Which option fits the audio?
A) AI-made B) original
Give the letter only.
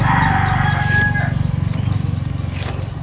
B